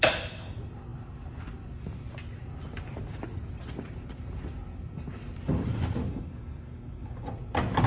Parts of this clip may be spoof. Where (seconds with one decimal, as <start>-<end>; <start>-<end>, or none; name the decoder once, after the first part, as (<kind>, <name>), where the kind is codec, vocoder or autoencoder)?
6.1-7.3 (codec, DAC)